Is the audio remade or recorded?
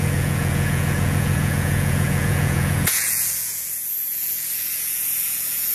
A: remade